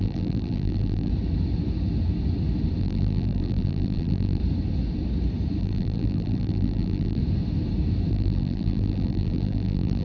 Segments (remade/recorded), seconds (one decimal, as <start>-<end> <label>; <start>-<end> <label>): 0.0-1.1 remade; 1.1-2.8 recorded; 2.8-4.4 remade; 4.4-5.6 recorded; 5.6-7.2 remade; 7.2-8.1 recorded; 8.1-10.0 remade